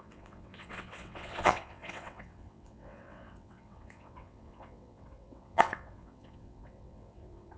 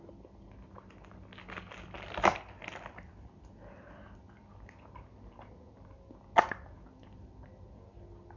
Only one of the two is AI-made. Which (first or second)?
first